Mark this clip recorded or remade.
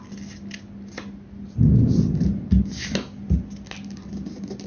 recorded